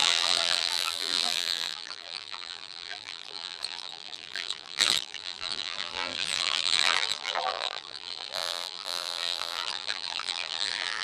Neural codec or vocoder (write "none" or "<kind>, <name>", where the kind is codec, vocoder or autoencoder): vocoder, BigVGAN v2